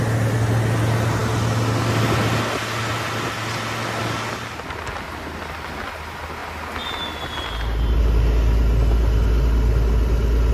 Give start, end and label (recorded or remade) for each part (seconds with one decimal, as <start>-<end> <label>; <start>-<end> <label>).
0.0-10.5 recorded